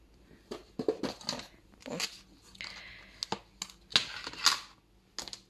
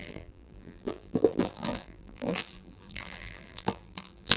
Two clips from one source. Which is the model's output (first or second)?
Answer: second